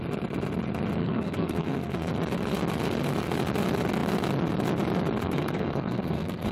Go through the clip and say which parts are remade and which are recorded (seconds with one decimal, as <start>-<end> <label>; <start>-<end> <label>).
0.0-1.0 recorded; 1.0-2.1 remade; 2.1-5.2 recorded; 5.2-6.5 remade